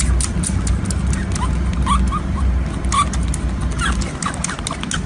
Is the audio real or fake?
real